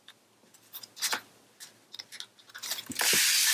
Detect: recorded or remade recorded